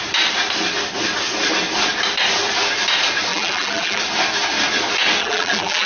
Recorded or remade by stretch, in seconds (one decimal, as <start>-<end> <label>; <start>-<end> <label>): 0.0-3.3 recorded; 3.3-4.0 remade; 4.0-5.2 recorded; 5.2-5.9 remade